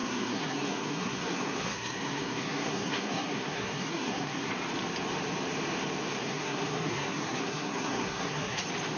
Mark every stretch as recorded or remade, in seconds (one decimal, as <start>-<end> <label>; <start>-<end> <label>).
0.0-4.5 remade; 4.5-6.2 recorded; 6.2-8.6 remade; 8.6-9.0 recorded